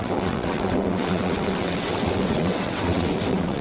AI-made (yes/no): yes